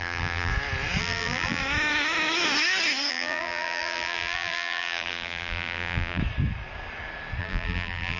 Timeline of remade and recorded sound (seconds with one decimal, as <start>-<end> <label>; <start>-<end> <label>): 0.0-0.5 remade; 0.5-1.0 recorded; 1.0-1.6 remade; 1.6-3.1 recorded; 3.1-6.2 remade; 6.2-7.4 recorded; 7.4-8.2 remade